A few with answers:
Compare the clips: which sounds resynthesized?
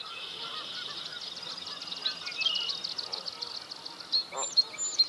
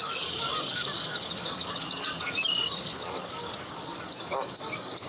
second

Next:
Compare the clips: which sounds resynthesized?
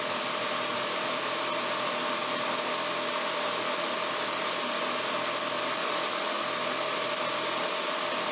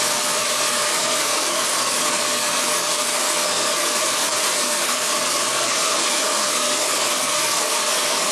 second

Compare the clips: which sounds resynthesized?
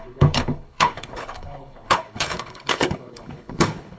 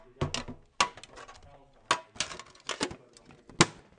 first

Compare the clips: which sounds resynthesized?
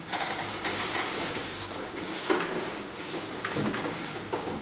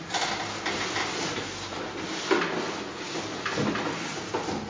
first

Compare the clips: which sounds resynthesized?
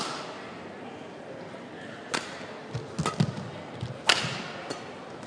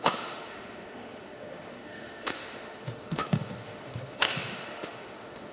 second